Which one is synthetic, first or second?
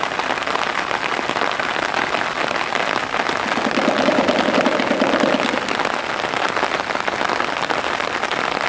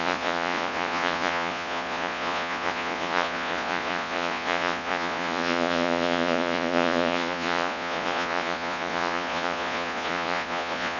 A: second